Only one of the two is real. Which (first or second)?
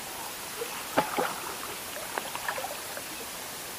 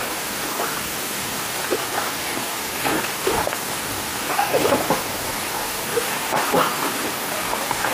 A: first